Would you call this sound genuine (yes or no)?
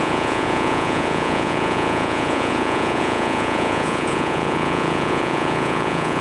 no